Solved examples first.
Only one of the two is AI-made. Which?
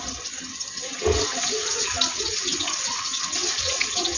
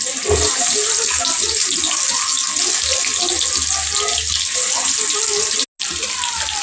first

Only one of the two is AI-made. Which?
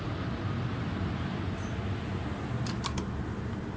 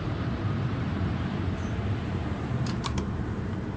second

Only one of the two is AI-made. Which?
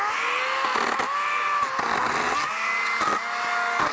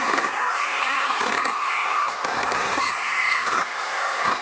second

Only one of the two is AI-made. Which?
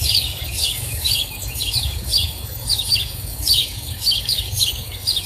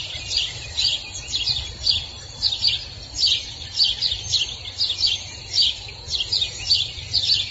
first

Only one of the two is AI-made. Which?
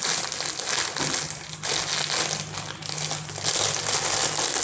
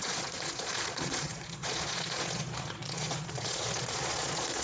second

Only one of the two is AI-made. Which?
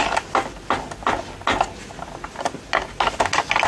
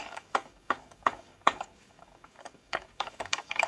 second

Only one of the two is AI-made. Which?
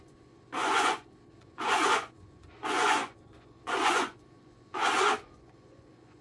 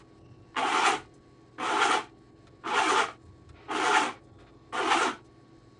first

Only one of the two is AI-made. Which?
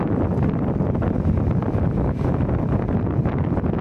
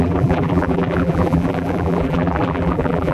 second